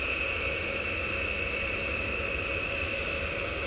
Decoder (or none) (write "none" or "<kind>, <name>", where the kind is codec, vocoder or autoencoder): none